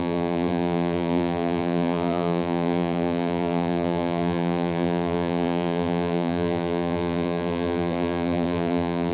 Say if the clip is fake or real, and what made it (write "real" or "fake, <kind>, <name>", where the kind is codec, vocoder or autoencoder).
fake, vocoder, BigVGAN v2